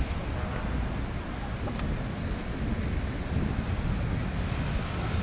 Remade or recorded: recorded